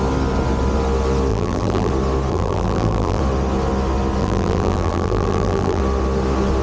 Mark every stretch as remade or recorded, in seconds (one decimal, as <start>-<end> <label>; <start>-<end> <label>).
0.0-1.3 recorded; 1.3-1.9 remade; 1.9-2.3 recorded; 2.3-3.2 remade; 3.2-4.2 recorded; 4.2-5.8 remade; 5.8-6.6 recorded